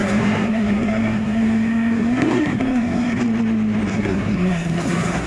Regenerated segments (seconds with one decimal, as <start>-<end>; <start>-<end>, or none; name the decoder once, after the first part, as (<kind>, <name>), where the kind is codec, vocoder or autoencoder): 0.0-3.2 (codec, SNAC); 3.9-5.3